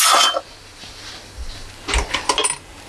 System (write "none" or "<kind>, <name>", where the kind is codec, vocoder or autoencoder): none